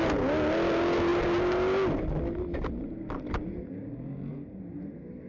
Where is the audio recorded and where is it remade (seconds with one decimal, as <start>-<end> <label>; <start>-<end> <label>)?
0.0-5.3 recorded